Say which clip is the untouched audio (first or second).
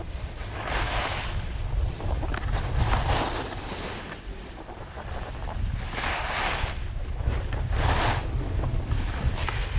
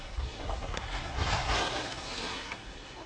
first